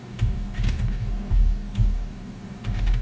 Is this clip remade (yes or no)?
yes